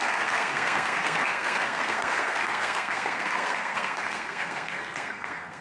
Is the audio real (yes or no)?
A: no